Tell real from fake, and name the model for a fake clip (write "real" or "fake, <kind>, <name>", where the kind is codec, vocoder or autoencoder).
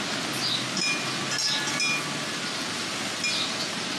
real